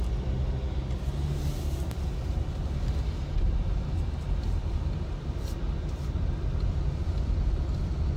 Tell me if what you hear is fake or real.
real